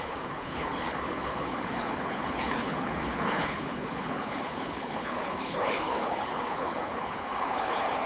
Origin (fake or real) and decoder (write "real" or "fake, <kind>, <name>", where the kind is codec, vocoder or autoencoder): fake, codec, HILCodec